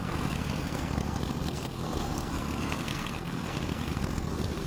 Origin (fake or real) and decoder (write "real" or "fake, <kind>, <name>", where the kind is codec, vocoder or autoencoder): fake, codec, SNAC